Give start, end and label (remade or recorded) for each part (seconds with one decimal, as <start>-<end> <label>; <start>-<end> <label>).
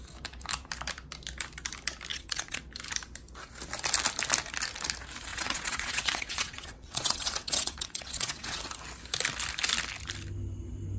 0.0-2.1 recorded; 2.1-2.6 remade; 2.6-5.3 recorded; 5.3-8.6 remade; 8.6-11.0 recorded